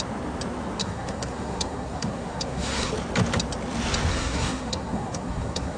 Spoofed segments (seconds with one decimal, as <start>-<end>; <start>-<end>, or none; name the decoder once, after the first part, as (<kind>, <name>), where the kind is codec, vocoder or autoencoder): 0.8-2.9 (codec, SNAC); 4.1-5.8